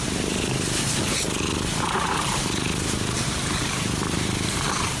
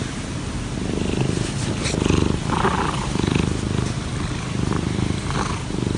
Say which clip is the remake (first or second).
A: first